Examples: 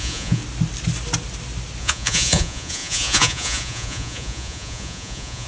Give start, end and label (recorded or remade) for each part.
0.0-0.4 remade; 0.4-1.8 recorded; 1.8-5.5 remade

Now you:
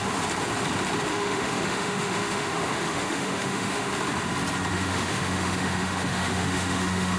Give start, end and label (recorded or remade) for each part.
0.0-1.1 recorded; 1.1-3.9 remade; 3.9-4.7 recorded; 4.7-7.2 remade

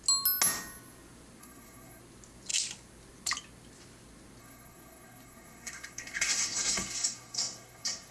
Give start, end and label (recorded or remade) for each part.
0.0-1.4 recorded; 1.4-2.0 remade; 2.0-4.4 recorded; 4.4-8.1 remade

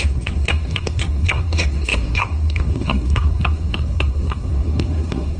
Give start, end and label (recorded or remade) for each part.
0.0-5.4 remade

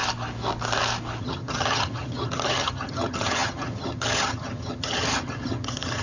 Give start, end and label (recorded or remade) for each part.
0.0-1.2 recorded; 1.2-6.0 remade